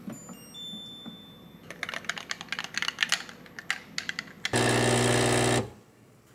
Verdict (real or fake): real